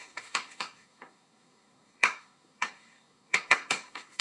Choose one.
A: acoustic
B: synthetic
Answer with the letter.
B